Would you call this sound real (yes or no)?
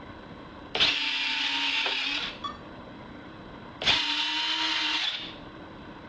yes